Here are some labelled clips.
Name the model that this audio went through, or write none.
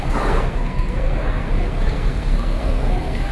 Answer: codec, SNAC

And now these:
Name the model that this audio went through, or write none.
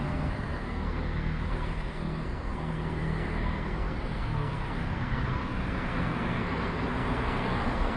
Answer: codec, SNAC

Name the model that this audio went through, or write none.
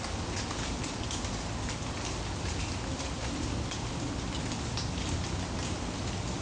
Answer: none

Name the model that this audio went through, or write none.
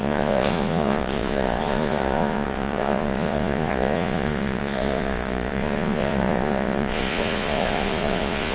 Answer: vocoder, Vocos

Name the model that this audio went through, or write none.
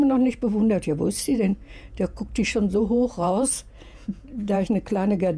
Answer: vocoder, Vocos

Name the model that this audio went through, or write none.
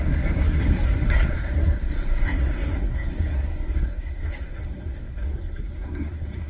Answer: codec, SNAC